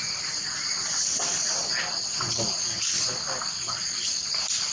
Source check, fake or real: real